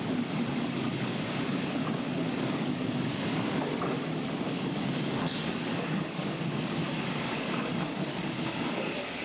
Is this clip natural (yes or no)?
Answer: no